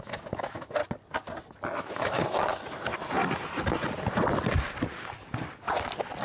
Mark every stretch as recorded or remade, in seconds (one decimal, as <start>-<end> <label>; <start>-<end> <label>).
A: 0.0-0.8 remade; 0.8-1.8 recorded; 1.8-2.5 remade; 2.5-6.2 recorded